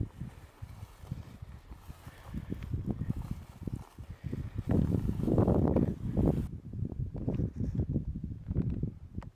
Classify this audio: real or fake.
real